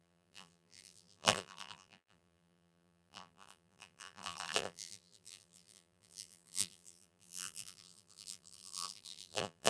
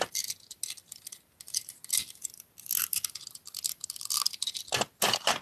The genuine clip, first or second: second